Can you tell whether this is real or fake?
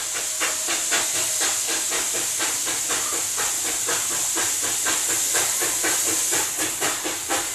real